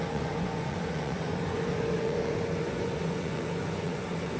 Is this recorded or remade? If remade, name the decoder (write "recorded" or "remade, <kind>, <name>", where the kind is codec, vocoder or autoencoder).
remade, vocoder, Vocos